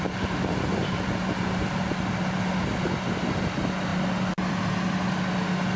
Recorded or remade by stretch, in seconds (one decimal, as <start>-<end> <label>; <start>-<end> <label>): 0.0-5.8 recorded